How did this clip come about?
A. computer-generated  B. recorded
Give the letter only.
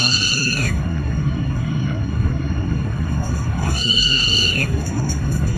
A